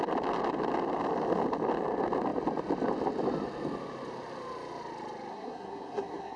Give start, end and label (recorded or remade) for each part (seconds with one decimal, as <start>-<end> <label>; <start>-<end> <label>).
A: 0.0-5.3 recorded; 5.3-6.4 remade

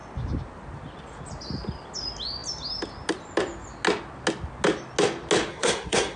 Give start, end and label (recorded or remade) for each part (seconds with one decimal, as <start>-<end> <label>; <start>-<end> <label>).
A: 0.0-5.5 recorded; 5.5-6.2 remade

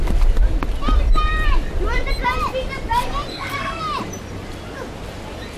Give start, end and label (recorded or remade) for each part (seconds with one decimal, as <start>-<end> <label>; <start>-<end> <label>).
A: 0.0-3.3 recorded; 3.3-3.8 remade; 3.8-5.6 recorded